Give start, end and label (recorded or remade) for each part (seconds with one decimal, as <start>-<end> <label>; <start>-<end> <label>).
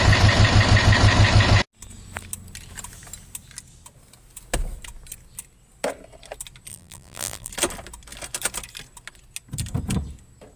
0.0-6.7 recorded; 6.7-7.5 remade; 7.5-10.6 recorded